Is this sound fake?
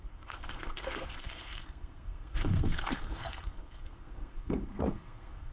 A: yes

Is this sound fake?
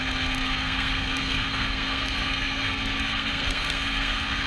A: yes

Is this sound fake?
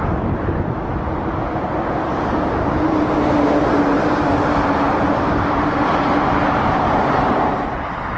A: no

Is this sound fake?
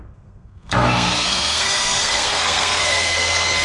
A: yes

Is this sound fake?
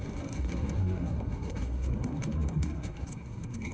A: yes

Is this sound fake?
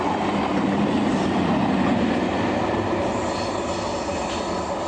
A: no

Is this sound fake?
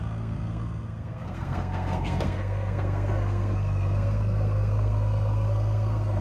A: yes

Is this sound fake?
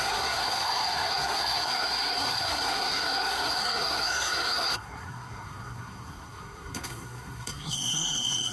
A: yes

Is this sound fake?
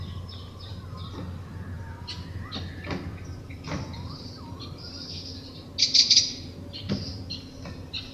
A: no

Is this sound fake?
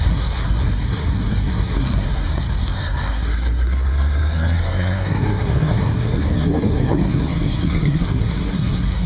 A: yes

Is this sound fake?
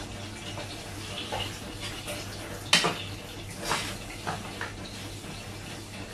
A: no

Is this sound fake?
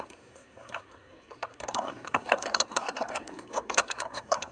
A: yes